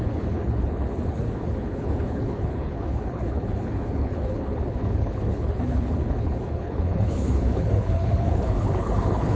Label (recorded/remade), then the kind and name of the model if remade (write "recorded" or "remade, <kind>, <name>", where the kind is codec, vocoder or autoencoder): remade, codec, HILCodec